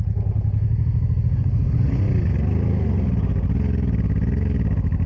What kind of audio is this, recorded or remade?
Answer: recorded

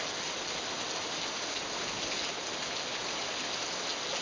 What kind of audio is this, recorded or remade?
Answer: recorded